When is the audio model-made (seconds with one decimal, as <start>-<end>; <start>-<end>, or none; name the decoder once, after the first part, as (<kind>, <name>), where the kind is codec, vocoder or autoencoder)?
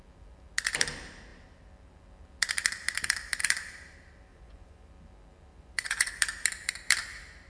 4.3-4.9 (vocoder, Vocos); 5.5-6.1